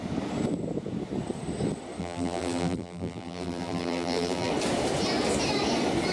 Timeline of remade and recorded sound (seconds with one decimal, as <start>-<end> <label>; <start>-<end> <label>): 0.0-2.0 recorded; 2.0-4.5 remade; 4.5-6.1 recorded